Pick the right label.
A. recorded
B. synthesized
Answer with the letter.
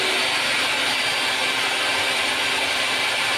A